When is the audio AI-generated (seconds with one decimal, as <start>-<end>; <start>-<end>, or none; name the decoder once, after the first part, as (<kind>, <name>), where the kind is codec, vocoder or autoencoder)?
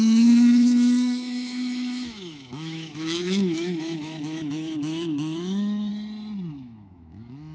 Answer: 0.0-5.9 (autoencoder, DAC-VAE); 6.5-7.5